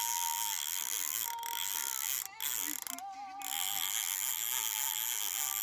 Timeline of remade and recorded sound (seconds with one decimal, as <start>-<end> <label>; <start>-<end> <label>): 0.0-5.6 recorded